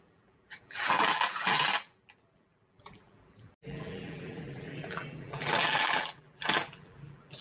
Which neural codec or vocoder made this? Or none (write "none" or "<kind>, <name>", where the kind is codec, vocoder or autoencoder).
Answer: vocoder, BigVGAN v2